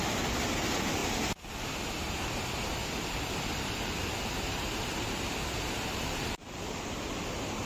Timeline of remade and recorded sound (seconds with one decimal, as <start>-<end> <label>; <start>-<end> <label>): 0.0-2.8 recorded; 2.8-6.6 remade; 6.6-7.7 recorded